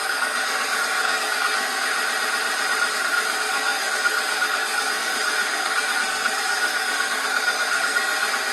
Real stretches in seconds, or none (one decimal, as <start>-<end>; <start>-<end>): 1.9-2.9